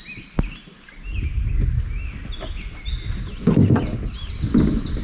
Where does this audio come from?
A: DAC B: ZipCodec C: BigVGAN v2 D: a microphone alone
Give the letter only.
D